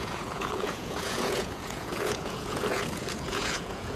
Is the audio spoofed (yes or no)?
yes